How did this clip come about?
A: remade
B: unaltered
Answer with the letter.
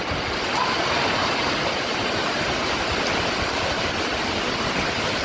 B